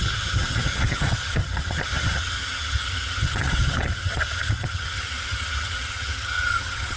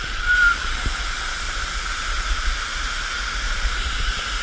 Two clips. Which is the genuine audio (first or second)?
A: second